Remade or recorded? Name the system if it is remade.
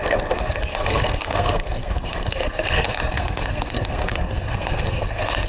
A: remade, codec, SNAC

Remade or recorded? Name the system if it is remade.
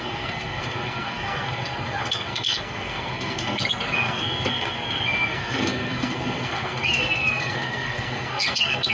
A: remade, codec, SNAC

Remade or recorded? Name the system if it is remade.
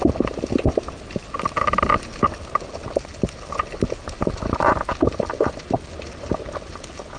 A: recorded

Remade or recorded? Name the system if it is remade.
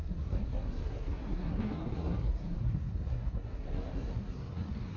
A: remade, codec, SNAC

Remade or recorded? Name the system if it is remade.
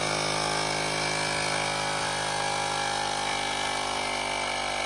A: recorded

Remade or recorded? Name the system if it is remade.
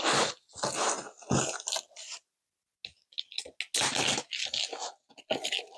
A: recorded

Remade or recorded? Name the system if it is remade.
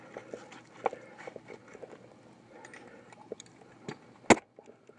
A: recorded